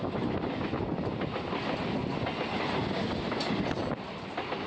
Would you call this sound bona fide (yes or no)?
yes